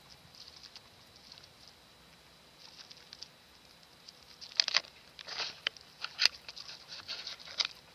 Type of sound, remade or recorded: recorded